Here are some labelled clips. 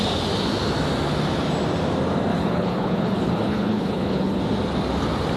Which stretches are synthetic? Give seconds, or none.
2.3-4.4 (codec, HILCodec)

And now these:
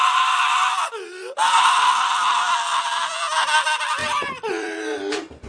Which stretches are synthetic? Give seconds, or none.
1.4-1.9 (vocoder, BigVGAN v2); 2.7-3.2; 4.0-5.5